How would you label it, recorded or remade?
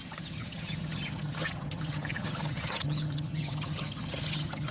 remade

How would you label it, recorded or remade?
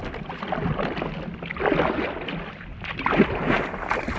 recorded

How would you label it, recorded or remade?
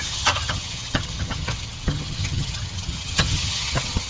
remade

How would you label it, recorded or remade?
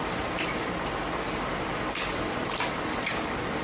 recorded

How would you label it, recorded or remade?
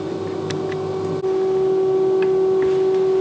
recorded